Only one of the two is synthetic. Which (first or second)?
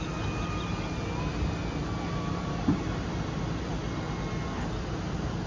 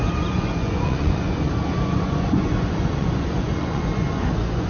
second